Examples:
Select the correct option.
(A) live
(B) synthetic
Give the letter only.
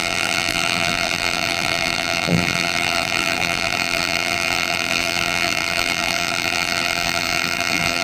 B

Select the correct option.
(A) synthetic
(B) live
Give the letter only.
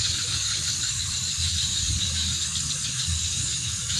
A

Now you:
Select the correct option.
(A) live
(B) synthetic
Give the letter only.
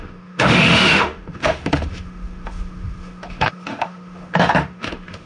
B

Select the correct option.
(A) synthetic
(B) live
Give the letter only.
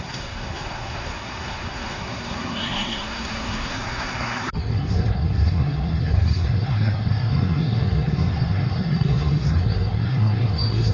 A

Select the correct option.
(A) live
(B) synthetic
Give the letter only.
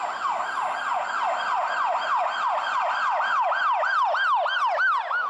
A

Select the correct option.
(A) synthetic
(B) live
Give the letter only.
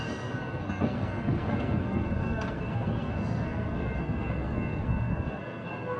A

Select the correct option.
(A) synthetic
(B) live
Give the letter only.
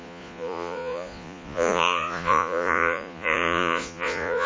A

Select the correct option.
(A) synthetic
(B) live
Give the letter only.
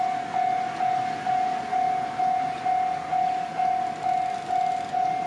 B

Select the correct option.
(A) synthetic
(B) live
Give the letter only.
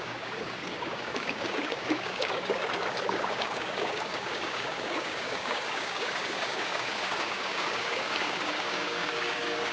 A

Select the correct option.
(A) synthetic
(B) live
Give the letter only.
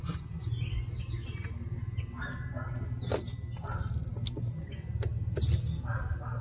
B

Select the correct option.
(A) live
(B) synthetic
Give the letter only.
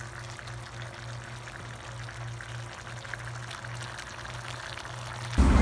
A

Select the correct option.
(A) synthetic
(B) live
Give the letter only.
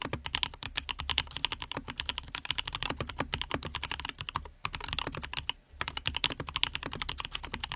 B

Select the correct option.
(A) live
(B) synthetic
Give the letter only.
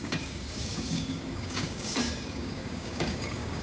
B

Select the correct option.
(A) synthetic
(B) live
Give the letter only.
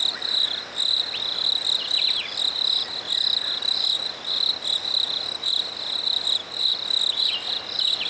B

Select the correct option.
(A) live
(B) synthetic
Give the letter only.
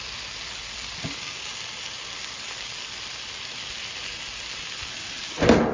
A